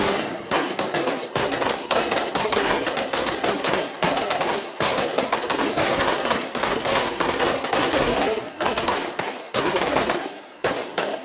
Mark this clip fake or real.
fake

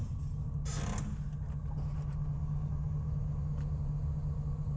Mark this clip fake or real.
real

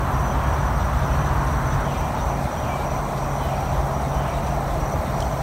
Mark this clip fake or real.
real